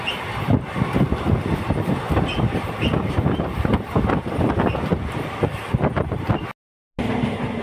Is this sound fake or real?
real